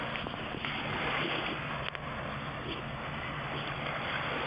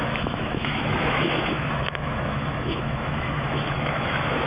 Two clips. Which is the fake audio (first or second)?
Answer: second